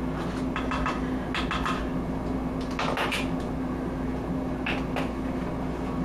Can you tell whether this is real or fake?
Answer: real